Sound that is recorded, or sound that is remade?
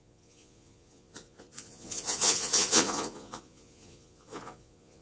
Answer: remade